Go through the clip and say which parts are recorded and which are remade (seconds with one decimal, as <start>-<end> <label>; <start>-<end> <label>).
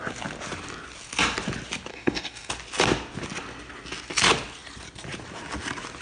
0.0-1.9 recorded; 1.9-2.5 remade; 2.5-6.0 recorded